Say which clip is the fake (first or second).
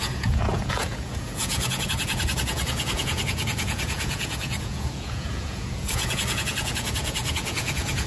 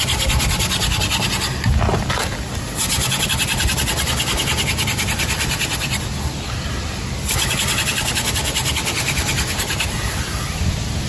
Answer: first